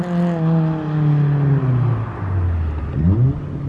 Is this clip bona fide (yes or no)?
yes